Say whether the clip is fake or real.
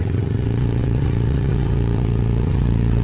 fake